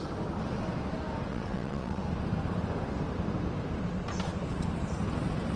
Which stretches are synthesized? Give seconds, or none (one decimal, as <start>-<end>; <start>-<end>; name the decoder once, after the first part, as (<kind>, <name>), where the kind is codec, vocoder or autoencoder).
1.3-2.0 (vocoder, WaveNeXt)